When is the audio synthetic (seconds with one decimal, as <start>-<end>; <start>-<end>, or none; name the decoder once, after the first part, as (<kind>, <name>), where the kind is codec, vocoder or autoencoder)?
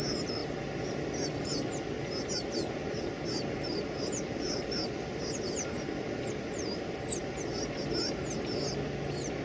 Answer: none